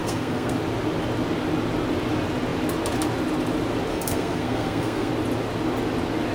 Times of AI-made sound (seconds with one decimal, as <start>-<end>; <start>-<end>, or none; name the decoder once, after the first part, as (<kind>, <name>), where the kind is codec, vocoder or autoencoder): 0.0-0.6 (codec, SNAC); 3.9-5.1